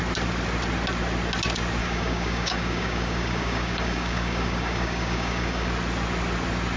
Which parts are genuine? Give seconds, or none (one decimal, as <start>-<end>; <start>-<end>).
0.0-1.8; 5.7-6.8